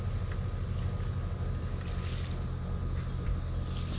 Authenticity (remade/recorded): recorded